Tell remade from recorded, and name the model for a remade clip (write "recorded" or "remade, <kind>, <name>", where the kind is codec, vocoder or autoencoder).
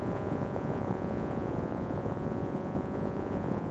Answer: remade, vocoder, Vocos